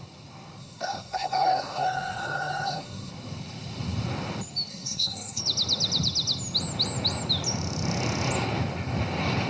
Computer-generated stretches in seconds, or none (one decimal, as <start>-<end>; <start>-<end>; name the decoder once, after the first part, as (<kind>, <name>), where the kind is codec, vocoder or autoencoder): 0.6-3.1 (codec, SNAC); 4.7-5.4